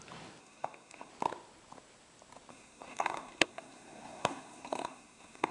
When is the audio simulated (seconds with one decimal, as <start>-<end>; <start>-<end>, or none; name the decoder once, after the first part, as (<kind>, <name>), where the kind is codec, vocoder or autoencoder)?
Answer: 0.4-1.1 (codec, SNAC); 2.5-5.5